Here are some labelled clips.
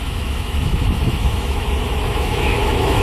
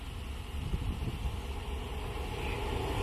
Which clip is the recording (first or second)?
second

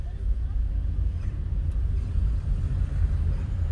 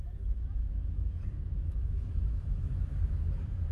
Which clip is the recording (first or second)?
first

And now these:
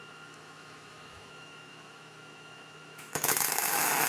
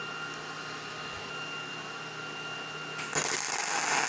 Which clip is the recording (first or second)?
second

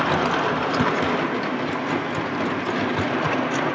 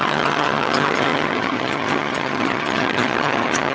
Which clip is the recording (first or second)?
first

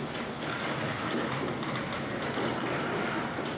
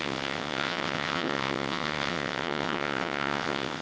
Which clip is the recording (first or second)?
first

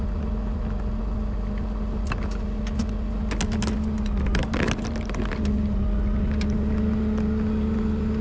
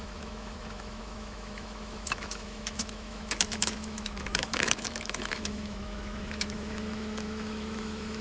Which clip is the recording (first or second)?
first